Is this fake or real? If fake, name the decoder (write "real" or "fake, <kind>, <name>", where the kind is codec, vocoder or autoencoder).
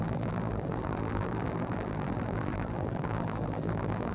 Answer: fake, vocoder, BigVGAN v2